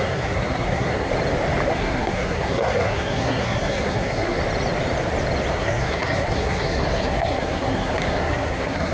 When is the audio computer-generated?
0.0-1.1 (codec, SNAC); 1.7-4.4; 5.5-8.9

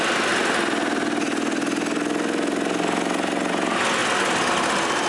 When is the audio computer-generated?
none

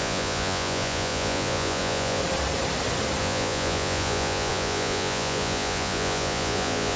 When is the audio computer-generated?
0.0-2.2 (vocoder, Vocos); 3.2-7.0

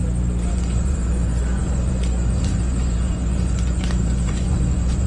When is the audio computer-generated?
0.5-5.1 (vocoder, Vocos)

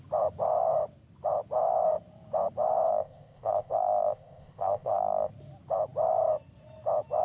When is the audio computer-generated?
2.9-5.3 (codec, ZipCodec)

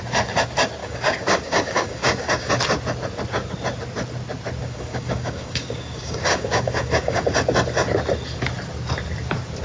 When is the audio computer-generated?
0.8-2.5 (codec, DAC); 4.6-7.2

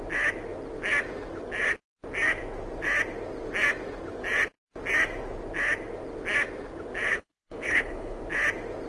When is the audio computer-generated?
7.1-8.2 (codec, HILCodec)